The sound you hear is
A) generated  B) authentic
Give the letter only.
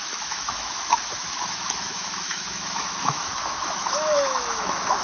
A